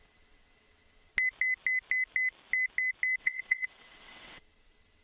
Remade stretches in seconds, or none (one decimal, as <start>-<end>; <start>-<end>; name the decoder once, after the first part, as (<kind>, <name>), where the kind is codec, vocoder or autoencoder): 0.0-1.1 (vocoder, WaveNeXt); 3.2-5.0